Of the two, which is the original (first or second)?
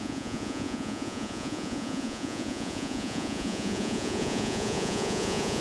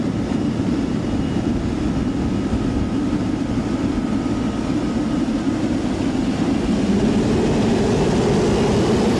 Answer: second